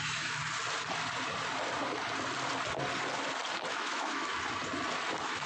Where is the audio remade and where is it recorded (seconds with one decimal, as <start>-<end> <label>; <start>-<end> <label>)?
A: 0.0-0.4 remade; 0.4-3.7 recorded; 3.7-4.3 remade; 4.3-5.1 recorded; 5.1-5.5 remade